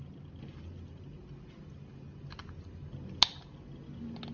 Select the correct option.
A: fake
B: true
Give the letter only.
B